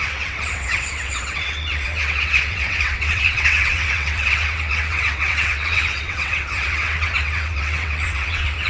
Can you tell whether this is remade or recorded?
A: remade